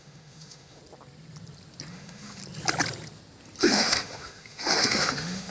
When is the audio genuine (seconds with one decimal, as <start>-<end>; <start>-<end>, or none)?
0.8-1.9; 2.4-3.6